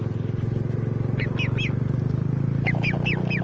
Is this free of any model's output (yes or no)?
yes